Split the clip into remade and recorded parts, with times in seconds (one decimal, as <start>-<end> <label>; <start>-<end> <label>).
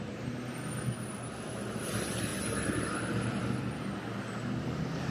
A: 0.0-2.3 recorded; 2.3-3.7 remade; 3.7-5.1 recorded